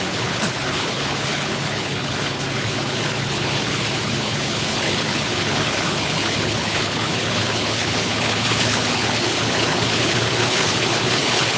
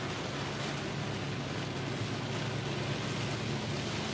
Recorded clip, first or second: second